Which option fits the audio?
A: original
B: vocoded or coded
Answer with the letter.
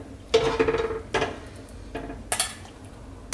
A